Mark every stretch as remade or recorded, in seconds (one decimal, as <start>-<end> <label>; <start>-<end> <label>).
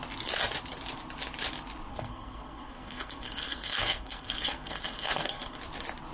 0.0-1.9 recorded; 1.9-5.6 remade; 5.6-6.1 recorded